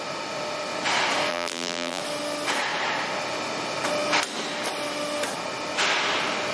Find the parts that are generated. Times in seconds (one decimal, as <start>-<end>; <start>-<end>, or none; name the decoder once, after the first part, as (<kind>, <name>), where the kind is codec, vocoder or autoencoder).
1.3-2.0 (vocoder, BigVGAN v2)